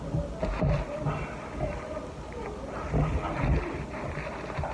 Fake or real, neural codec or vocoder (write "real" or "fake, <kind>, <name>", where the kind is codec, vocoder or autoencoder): real